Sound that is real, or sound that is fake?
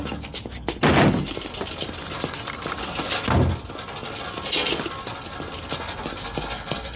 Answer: real